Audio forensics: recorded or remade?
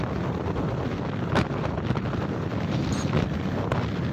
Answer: recorded